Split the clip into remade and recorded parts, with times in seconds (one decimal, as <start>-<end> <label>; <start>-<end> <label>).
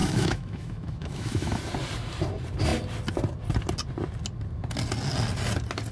0.0-1.6 remade; 1.6-5.9 recorded